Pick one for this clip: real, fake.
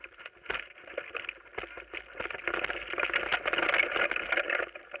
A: real